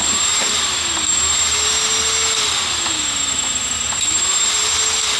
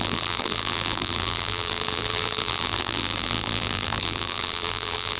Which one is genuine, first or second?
first